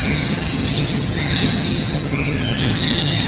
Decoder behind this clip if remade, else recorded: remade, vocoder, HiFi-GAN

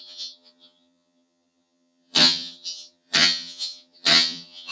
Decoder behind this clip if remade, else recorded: remade, vocoder, HiFi-GAN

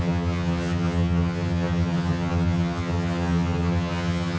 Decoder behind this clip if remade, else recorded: remade, vocoder, HiFi-GAN